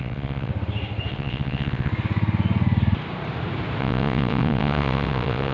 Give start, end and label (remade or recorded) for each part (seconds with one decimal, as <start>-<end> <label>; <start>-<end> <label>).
0.0-0.5 remade; 0.5-1.1 recorded; 1.1-1.9 remade; 1.9-3.8 recorded; 3.8-5.5 remade